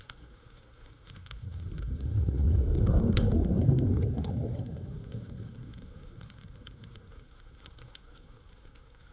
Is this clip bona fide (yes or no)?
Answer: no